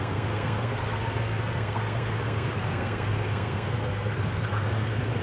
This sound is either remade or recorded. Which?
remade